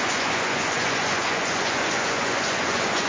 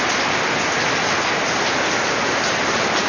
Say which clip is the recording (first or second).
second